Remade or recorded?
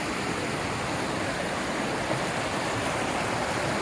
recorded